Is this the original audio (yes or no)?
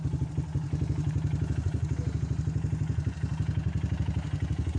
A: yes